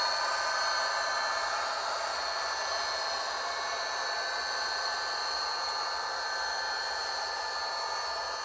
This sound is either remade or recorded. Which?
recorded